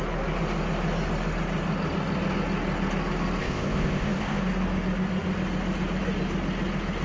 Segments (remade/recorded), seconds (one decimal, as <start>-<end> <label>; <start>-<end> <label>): 0.0-3.4 recorded; 3.4-4.4 remade; 4.4-7.0 recorded

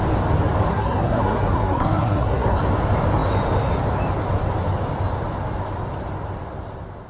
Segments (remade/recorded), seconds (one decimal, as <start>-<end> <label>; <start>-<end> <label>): 0.0-0.7 recorded; 0.7-2.6 remade; 2.6-7.1 recorded

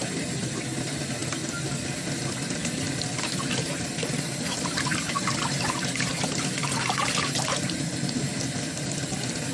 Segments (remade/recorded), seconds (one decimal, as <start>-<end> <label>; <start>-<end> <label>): 0.0-9.5 recorded